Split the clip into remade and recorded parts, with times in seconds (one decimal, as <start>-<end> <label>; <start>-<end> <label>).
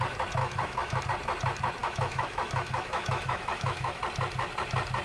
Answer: 0.0-0.4 recorded; 0.4-1.0 remade; 1.0-1.8 recorded; 1.8-4.0 remade; 4.0-5.0 recorded